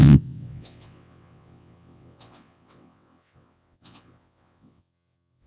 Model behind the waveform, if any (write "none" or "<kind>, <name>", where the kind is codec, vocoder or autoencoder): vocoder, WaveNeXt